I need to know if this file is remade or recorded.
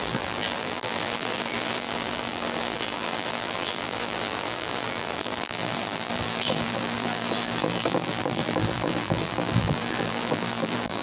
remade